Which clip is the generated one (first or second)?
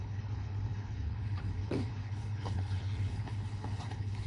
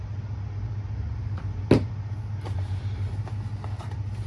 first